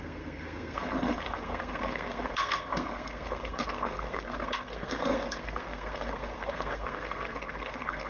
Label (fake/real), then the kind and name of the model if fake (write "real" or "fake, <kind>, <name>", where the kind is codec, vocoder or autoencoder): fake, codec, SNAC